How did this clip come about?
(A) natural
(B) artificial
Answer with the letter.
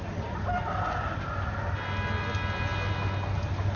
A